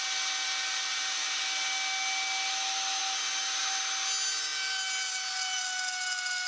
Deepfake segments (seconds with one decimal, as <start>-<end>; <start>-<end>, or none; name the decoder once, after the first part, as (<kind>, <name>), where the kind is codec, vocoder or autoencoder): none

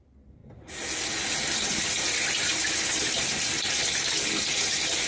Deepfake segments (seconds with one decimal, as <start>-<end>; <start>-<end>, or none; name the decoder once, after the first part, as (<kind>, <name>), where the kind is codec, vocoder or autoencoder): none

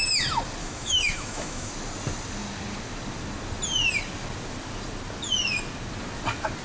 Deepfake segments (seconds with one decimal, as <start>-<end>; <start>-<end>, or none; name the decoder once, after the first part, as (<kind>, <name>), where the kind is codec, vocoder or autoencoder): 0.6-1.7 (autoencoder, DAC-VAE)